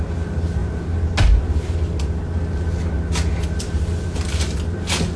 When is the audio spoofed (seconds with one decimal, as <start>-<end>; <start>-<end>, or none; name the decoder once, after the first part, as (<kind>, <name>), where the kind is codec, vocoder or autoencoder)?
none